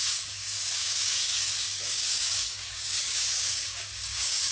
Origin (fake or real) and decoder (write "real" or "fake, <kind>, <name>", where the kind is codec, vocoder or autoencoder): fake, codec, DAC